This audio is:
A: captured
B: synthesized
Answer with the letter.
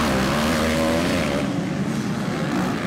A